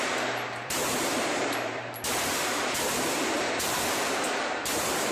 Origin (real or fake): fake